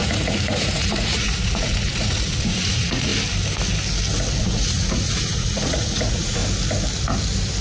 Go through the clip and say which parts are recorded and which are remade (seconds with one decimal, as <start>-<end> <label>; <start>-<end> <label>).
0.0-3.1 remade; 3.1-4.4 recorded; 4.4-6.4 remade; 6.4-7.6 recorded